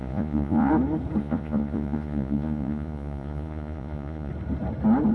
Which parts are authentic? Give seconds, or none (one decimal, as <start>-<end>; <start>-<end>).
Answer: 0.7-1.2; 4.3-5.1